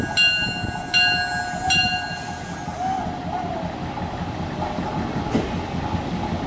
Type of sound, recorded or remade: recorded